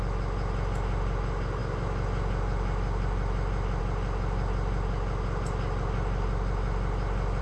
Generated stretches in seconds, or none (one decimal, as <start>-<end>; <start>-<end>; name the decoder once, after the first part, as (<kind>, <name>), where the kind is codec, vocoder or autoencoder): none